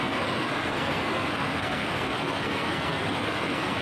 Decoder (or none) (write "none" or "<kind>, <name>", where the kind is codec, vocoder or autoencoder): codec, SNAC